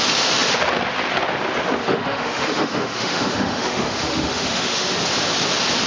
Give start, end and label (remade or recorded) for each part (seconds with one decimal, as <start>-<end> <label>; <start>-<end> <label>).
0.0-1.8 recorded; 1.8-4.9 remade; 4.9-5.9 recorded